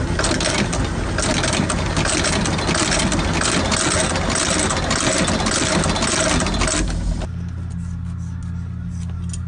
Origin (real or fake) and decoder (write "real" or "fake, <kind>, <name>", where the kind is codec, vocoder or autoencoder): real